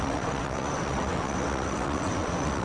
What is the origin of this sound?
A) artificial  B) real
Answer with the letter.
A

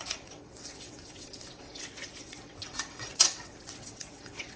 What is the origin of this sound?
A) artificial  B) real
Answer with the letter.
A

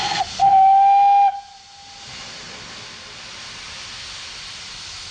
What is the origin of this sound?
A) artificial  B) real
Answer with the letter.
B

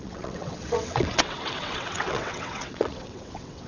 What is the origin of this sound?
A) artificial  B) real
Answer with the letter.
A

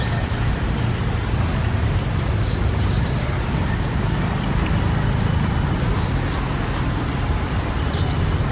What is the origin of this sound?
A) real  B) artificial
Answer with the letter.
A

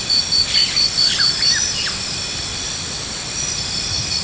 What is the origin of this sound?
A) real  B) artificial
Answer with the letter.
A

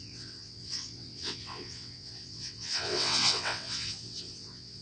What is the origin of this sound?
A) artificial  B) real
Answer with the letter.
A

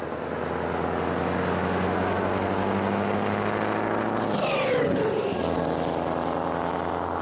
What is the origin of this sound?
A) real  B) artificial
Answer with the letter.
A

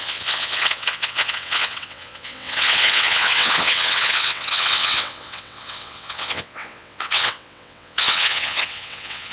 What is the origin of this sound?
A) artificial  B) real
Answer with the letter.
A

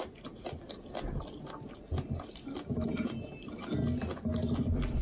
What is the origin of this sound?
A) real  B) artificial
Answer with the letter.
A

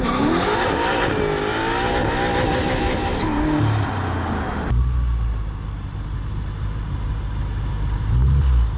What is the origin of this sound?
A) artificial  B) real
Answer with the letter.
B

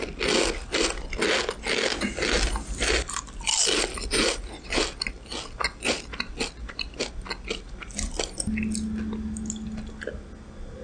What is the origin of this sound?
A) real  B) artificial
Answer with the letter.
A